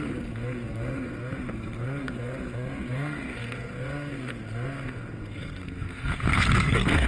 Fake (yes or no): yes